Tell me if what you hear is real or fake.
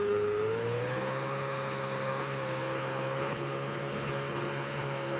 fake